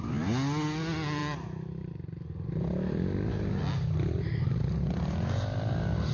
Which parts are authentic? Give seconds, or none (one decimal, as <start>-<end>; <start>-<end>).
0.0-6.1